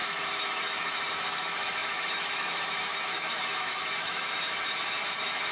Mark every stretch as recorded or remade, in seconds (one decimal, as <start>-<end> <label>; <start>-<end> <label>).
0.0-5.5 remade

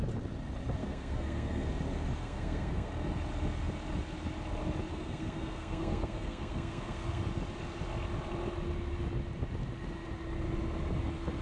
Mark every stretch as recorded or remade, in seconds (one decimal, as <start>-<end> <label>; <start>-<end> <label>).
0.0-0.8 recorded; 0.8-1.7 remade; 1.7-2.2 recorded; 2.2-2.9 remade; 2.9-4.9 recorded; 4.9-7.2 remade; 7.2-11.4 recorded

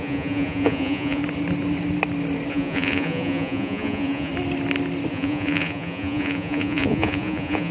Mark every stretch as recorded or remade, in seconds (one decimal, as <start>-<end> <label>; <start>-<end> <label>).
0.0-1.2 remade; 1.2-2.5 recorded; 2.5-4.3 remade; 4.3-5.1 recorded; 5.1-7.7 remade

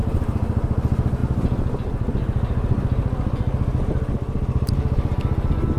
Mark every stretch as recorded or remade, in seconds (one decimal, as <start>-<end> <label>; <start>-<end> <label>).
0.0-5.8 recorded

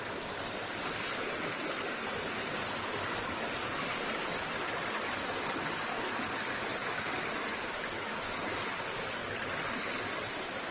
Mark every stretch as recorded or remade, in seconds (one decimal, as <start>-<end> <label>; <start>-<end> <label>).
0.0-10.7 recorded